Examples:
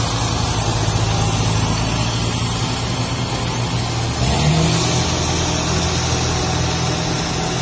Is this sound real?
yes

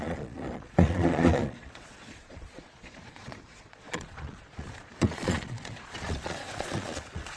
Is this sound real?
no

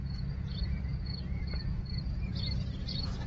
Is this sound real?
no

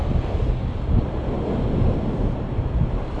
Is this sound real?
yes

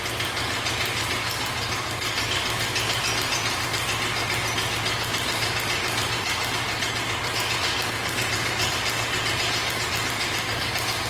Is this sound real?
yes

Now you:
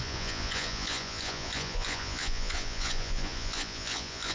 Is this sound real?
no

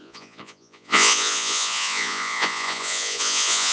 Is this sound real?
no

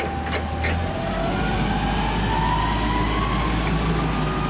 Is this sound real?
yes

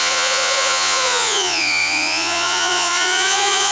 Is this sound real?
no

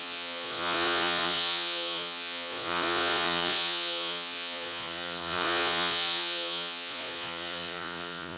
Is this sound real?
no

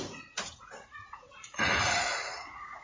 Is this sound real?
no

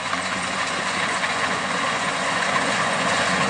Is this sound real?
no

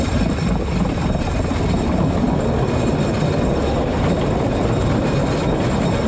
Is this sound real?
yes